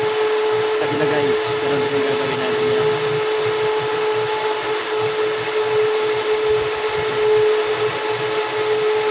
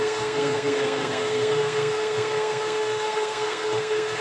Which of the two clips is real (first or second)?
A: first